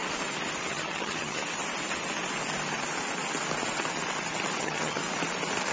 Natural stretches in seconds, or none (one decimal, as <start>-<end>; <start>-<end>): 0.0-0.7; 1.4-4.6; 5.0-5.7